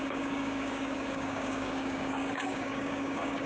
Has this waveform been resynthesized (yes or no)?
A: yes